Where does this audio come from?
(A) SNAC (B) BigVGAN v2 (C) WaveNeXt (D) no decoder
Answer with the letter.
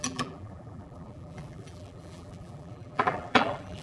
B